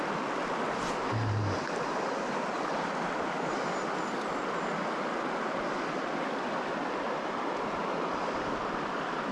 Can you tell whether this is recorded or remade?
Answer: recorded